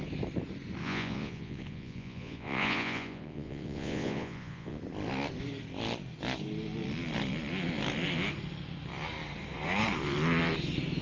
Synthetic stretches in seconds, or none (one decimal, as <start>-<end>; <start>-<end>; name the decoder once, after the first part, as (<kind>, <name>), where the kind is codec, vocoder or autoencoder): 0.8-4.8 (vocoder, Vocos)